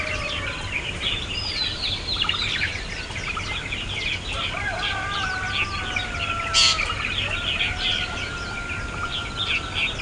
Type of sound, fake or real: real